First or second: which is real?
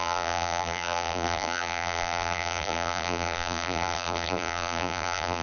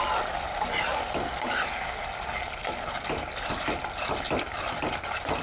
second